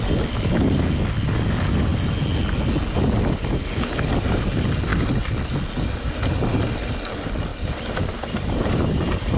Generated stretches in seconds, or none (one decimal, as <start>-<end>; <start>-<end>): 7.5-9.4